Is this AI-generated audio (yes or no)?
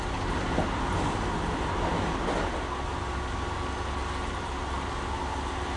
no